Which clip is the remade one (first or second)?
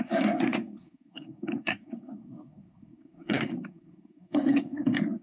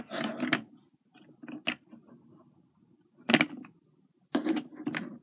first